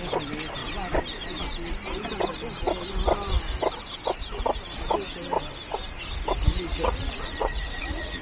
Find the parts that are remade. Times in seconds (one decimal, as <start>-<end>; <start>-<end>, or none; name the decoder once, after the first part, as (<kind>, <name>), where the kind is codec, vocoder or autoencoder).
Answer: 6.7-8.2 (vocoder, Vocos)